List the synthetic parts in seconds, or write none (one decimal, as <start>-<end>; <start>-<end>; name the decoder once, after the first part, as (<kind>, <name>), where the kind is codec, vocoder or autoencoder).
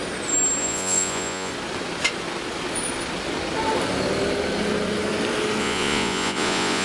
0.6-1.5 (vocoder, Vocos); 5.6-6.8